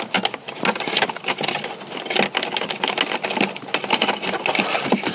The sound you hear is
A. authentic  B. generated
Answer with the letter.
A